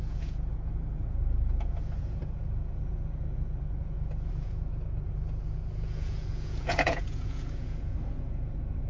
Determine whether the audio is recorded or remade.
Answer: remade